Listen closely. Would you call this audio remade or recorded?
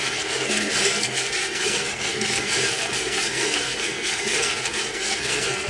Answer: remade